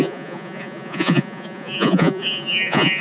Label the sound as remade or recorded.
remade